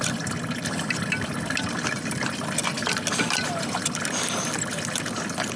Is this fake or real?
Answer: real